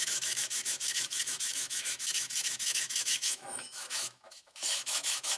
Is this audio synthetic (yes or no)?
yes